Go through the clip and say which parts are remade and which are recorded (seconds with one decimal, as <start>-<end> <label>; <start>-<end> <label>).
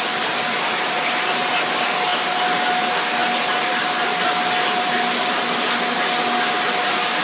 0.0-7.2 recorded